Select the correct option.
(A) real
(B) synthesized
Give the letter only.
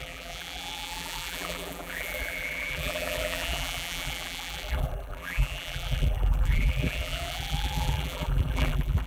B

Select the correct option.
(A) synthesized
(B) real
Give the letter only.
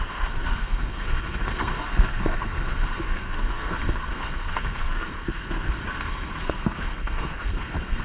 A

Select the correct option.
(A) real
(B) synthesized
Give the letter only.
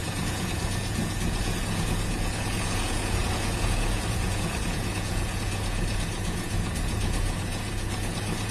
B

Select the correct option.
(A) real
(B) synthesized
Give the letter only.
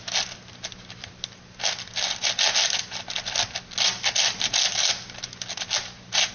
A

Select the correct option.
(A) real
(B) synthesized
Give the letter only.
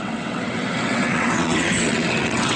B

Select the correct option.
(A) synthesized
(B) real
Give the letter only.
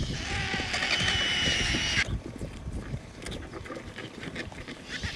B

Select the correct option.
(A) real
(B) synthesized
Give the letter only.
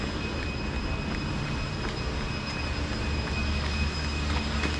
A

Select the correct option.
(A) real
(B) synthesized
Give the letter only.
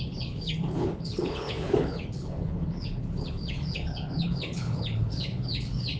B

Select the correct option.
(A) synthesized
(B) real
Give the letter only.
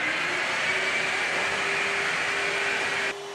B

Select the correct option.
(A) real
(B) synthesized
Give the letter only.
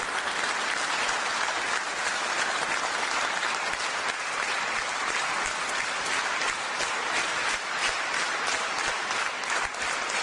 A